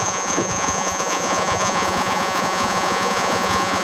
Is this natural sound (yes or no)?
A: no